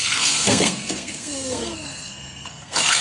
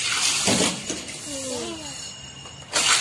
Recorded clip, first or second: second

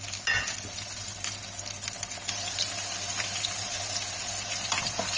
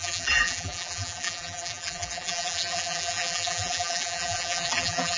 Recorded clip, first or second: first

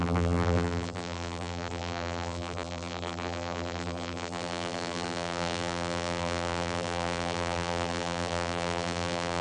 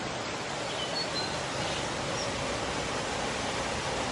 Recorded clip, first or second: second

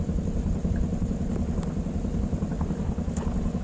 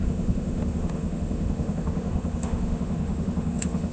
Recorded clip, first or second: first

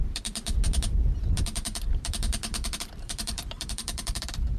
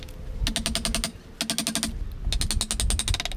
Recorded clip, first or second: second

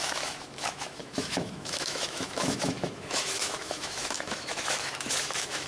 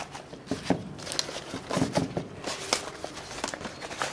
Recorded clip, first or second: second